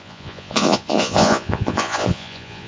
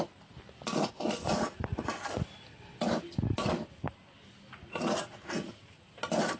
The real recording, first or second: second